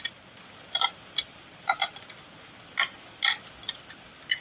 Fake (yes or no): no